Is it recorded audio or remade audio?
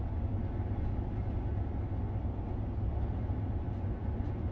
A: recorded